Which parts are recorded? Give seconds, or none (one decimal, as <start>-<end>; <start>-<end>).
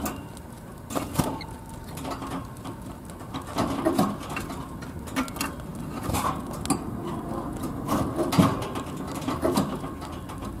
0.0-10.6